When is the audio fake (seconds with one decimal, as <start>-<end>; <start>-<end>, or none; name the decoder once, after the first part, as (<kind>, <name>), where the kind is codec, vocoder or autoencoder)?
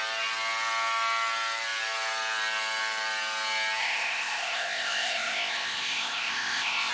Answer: 3.8-6.9 (codec, ZipCodec)